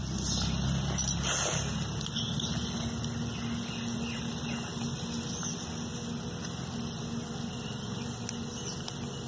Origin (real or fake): real